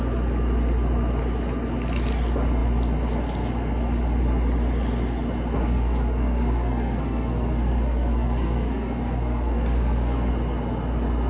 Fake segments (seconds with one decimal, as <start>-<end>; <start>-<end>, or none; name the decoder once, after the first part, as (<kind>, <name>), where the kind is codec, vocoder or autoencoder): 5.6-10.3 (codec, SNAC)